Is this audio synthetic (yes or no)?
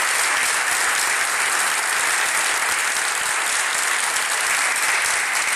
no